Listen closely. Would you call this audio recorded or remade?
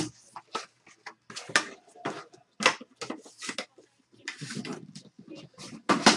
recorded